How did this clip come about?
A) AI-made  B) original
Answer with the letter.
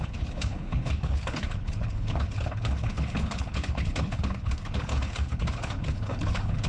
A